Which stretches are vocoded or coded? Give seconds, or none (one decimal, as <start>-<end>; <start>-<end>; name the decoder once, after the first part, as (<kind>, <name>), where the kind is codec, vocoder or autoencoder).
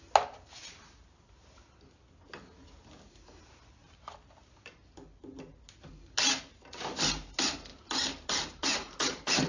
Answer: 3.8-4.7 (vocoder, BigVGAN v2); 7.7-9.5